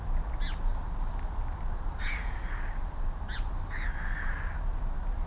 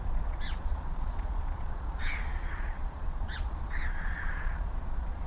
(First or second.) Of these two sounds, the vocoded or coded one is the second